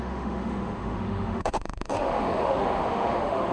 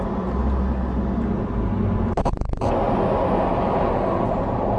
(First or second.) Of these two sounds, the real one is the second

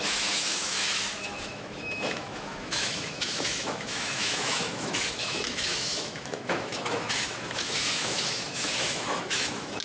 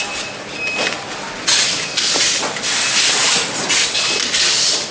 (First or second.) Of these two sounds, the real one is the second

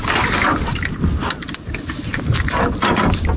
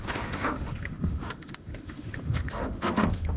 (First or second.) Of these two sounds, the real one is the first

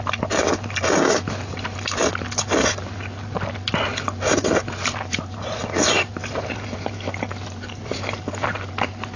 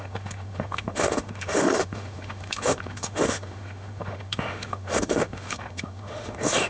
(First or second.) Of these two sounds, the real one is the first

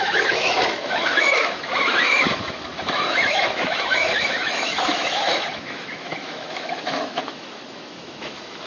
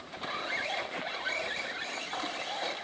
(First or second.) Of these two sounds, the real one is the second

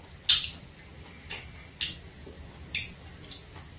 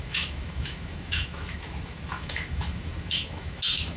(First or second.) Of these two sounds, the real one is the first